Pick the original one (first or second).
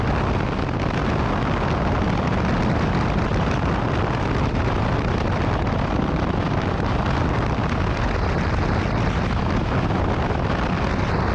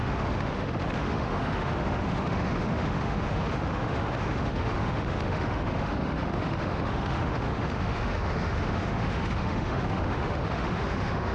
first